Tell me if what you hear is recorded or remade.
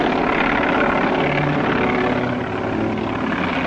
recorded